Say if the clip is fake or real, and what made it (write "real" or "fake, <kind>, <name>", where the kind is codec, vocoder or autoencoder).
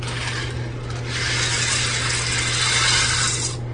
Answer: real